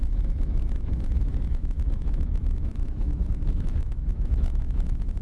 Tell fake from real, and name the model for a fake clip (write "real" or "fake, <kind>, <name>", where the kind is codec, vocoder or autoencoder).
fake, autoencoder, DAC-VAE